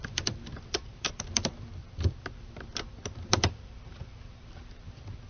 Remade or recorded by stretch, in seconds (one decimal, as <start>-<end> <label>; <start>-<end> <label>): 0.0-1.8 remade; 1.8-3.3 recorded; 3.3-5.3 remade